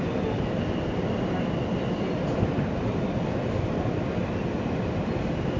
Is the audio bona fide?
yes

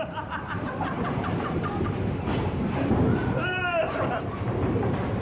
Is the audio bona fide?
no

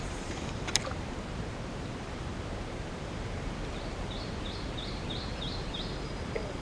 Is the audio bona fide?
no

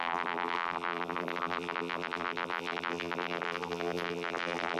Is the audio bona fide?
no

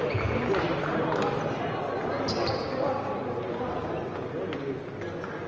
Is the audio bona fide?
yes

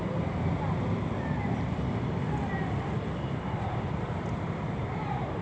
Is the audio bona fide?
no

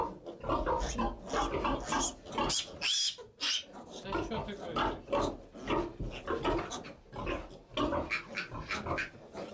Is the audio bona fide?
yes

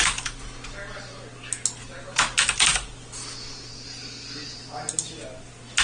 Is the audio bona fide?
yes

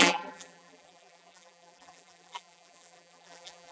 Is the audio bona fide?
no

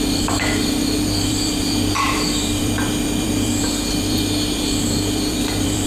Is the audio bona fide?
no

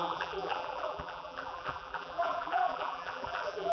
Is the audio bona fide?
no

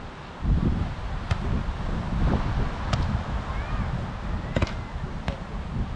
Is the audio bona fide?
yes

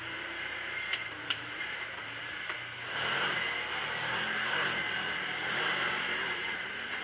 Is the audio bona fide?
no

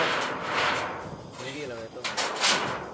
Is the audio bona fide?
yes